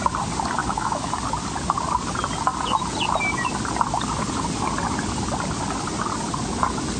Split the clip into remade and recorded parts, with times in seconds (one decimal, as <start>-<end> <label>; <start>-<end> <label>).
0.0-0.6 recorded; 0.6-1.2 remade; 1.2-7.0 recorded